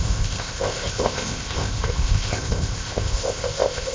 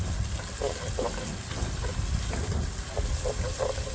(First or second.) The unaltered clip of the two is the second